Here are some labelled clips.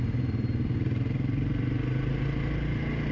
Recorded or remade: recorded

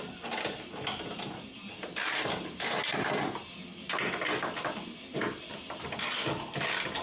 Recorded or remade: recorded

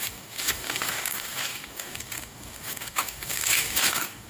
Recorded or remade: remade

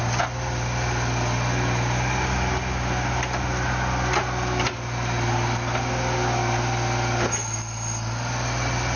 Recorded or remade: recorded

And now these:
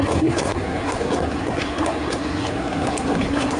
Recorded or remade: remade